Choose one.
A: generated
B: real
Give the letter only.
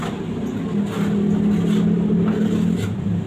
B